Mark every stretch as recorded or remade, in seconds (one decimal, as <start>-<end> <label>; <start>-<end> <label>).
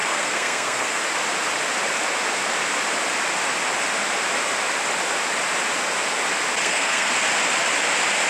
0.0-1.0 remade; 1.0-6.6 recorded; 6.6-7.1 remade; 7.1-8.3 recorded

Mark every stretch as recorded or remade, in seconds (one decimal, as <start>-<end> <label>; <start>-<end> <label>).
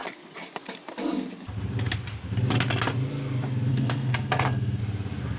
0.0-3.7 recorded; 3.7-4.8 remade; 4.8-5.4 recorded